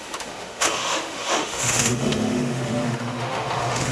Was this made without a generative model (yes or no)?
no